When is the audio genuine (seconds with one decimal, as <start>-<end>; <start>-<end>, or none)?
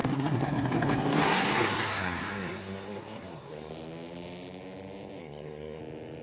3.7-5.2; 5.8-6.2